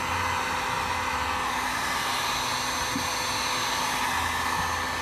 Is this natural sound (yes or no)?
yes